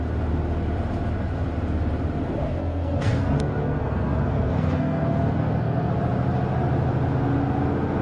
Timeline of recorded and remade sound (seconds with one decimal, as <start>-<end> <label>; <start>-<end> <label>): 0.0-2.6 recorded; 2.6-5.9 remade; 5.9-8.0 recorded